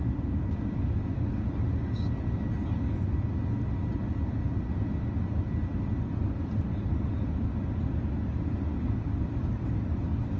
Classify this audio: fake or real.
real